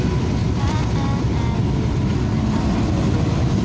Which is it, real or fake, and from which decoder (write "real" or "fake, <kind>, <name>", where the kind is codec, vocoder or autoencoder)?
real